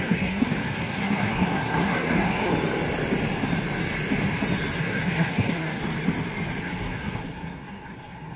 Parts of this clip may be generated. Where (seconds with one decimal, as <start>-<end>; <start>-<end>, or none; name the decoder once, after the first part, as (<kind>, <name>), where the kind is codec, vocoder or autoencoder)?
0.0-2.5 (codec, SNAC); 4.8-5.8; 6.6-8.4